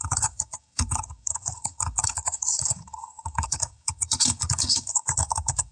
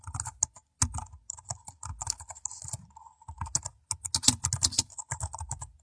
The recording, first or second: second